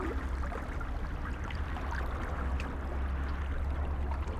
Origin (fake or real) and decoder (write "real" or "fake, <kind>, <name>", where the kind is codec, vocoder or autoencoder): real